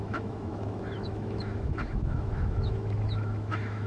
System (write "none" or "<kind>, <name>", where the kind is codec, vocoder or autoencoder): autoencoder, DAC-VAE